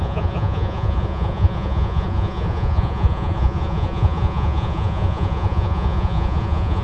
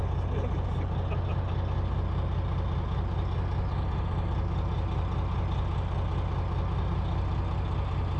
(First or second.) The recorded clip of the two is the second